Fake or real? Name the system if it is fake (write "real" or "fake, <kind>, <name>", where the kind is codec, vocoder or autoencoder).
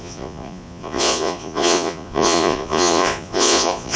fake, vocoder, Vocos